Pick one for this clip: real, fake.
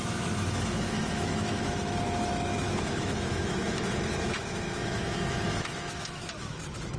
fake